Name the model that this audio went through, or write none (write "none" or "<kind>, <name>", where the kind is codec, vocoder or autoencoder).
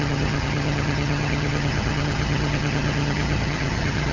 vocoder, HiFi-GAN